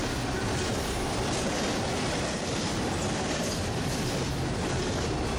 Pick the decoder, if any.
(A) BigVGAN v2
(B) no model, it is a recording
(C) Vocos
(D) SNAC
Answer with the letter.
A